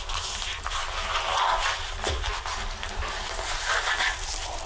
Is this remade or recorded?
recorded